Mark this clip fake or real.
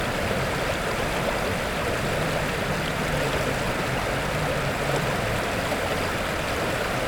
real